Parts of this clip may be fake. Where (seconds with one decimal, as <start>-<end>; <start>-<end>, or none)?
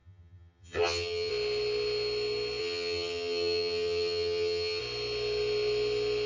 0.0-1.3; 2.6-4.8